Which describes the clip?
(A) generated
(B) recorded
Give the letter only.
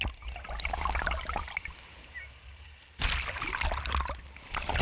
B